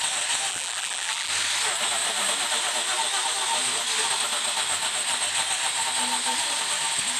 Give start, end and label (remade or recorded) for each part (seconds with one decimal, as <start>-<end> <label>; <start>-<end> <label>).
0.0-0.5 recorded; 0.5-1.3 remade; 1.3-7.2 recorded